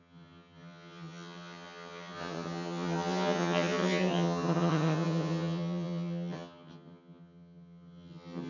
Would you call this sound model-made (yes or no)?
yes